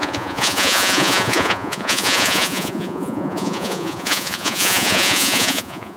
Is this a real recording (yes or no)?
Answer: no